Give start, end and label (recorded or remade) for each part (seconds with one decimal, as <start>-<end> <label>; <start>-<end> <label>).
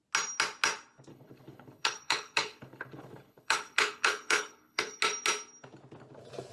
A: 0.0-1.1 recorded; 1.1-5.0 remade; 5.0-6.5 recorded